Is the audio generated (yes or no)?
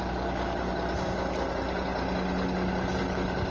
no